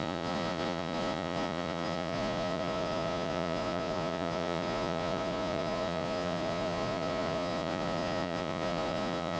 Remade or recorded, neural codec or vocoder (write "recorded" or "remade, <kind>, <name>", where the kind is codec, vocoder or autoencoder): remade, vocoder, Vocos